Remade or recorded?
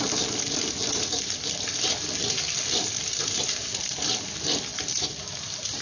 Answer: recorded